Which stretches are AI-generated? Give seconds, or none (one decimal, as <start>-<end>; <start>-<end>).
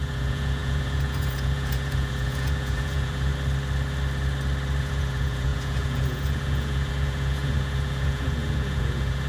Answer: 0.0-3.3; 4.8-9.3